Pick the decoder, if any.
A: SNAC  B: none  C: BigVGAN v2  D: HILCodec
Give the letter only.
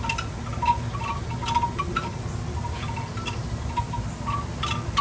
B